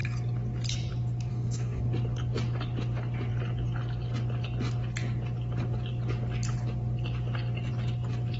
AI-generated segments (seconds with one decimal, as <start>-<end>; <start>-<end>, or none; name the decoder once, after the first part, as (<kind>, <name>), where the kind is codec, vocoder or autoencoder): 1.3-1.8 (codec, DAC)